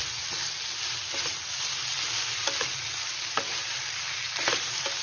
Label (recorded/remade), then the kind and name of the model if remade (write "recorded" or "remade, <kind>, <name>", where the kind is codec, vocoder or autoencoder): recorded